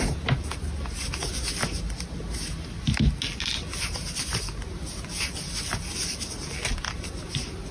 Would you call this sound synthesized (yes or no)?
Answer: no